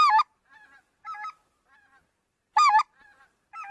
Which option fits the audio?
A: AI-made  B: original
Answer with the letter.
B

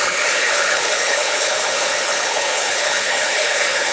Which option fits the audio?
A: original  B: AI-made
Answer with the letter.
B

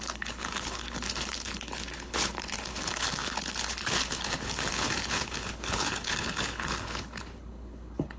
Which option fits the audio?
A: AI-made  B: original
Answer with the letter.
A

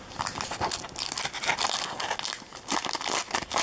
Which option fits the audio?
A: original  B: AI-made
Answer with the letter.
A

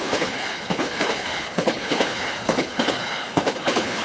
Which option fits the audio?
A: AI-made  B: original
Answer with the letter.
A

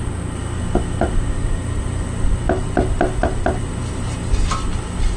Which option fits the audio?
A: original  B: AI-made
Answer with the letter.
A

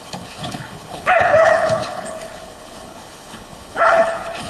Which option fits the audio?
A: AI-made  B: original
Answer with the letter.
A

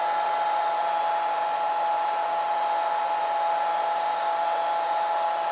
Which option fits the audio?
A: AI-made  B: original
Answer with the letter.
B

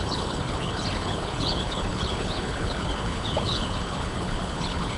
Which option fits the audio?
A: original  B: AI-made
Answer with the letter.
B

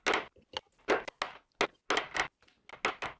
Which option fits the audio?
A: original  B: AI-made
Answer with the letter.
A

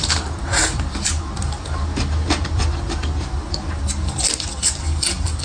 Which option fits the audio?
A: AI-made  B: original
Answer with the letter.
B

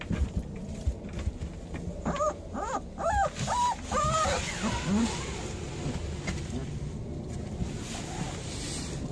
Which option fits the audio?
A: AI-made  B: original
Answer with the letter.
B